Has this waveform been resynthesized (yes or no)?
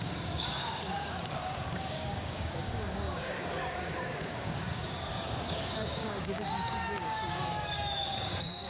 yes